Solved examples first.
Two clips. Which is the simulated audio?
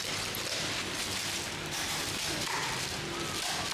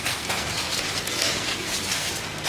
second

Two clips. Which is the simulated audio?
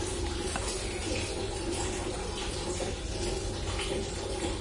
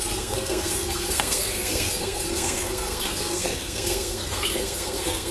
second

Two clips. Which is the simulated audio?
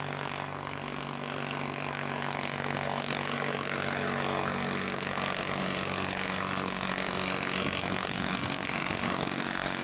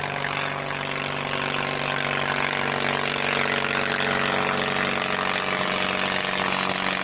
first